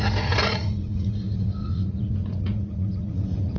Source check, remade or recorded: remade